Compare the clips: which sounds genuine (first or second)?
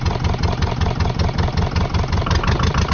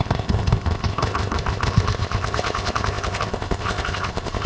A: first